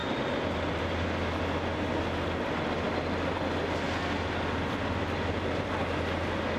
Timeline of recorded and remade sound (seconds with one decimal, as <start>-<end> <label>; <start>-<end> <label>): 0.0-0.8 remade; 0.8-1.7 recorded; 1.7-2.6 remade; 2.6-6.6 recorded